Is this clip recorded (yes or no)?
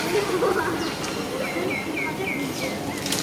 yes